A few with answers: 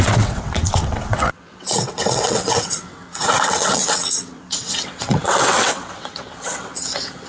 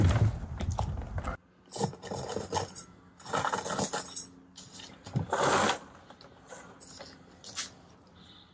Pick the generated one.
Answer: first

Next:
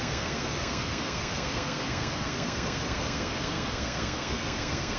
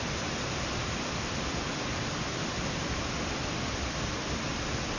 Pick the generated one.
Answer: first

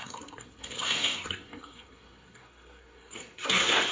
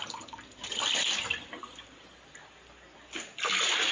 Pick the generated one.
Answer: first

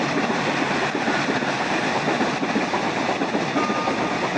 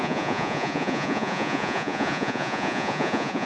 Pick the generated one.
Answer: second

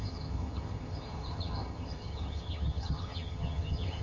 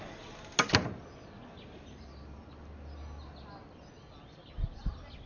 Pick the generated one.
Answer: first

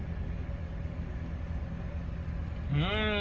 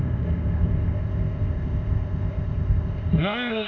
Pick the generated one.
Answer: second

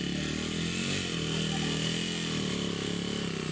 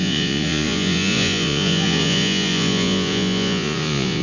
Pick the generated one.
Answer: second